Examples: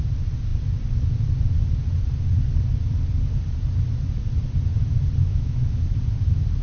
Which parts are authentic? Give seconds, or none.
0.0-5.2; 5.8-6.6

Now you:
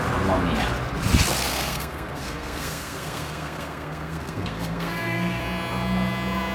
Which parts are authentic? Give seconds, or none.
0.0-1.5; 5.4-6.5

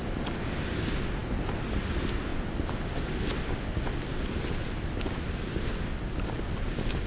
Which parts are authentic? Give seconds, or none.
0.0-7.1

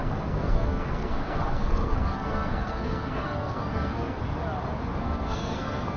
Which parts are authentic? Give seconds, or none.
4.2-5.0

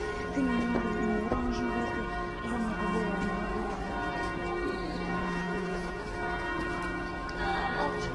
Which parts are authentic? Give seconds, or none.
0.0-5.2; 6.0-8.1